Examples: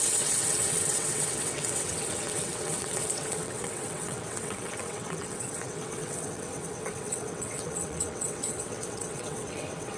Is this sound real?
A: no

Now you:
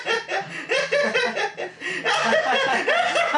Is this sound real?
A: yes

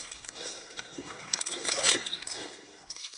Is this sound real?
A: no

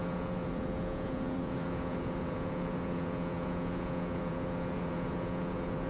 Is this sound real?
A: no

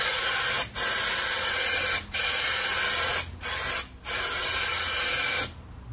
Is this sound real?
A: yes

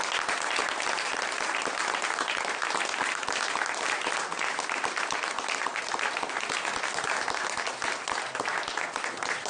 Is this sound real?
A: yes